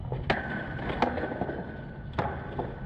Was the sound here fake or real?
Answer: real